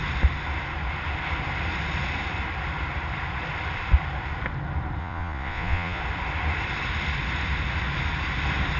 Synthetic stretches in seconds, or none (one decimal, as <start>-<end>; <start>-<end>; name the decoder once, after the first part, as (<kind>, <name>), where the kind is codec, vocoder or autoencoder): 5.0-6.0 (vocoder, Vocos)